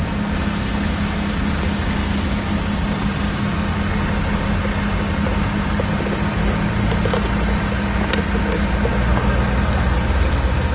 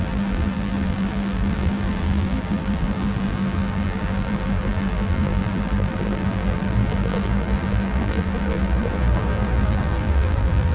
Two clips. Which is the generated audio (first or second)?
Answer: second